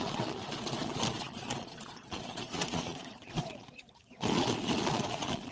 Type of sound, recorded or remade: remade